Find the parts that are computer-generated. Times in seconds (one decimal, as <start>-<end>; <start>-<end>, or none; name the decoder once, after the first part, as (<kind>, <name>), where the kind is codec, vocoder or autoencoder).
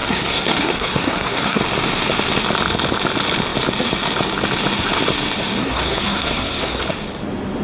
0.0-1.6 (codec, SNAC); 5.6-6.8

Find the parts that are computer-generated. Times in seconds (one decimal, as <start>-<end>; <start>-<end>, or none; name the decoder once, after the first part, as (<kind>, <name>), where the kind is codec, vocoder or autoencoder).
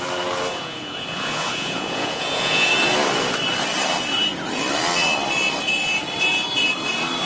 0.5-2.7 (vocoder, Vocos)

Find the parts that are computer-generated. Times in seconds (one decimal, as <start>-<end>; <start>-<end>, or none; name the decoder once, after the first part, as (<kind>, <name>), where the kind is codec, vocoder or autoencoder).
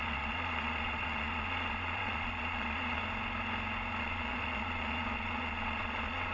0.0-3.0 (vocoder, Vocos); 4.0-6.3